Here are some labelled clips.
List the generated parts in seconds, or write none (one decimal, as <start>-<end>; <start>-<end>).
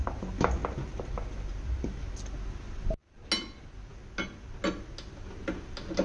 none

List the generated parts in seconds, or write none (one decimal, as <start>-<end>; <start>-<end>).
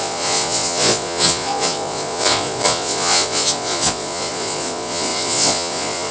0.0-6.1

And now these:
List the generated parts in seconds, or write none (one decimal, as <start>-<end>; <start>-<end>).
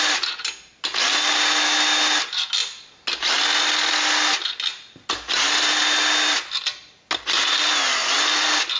none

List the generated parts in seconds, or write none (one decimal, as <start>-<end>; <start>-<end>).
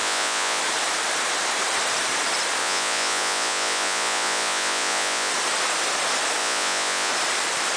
0.0-0.6; 2.6-5.3; 6.4-7.1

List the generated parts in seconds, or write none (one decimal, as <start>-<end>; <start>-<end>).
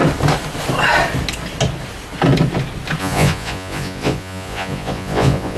3.0-5.6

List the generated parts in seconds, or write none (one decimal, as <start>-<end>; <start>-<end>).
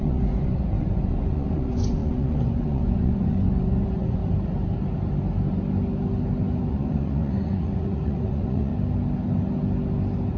0.0-4.2; 6.7-8.7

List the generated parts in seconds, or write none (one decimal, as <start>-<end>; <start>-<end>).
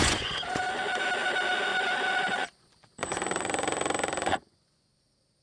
0.0-0.6; 1.7-4.9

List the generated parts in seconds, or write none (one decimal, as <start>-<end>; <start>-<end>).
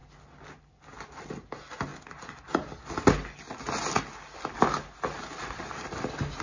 none